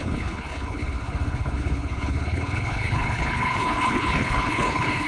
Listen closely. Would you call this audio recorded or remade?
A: remade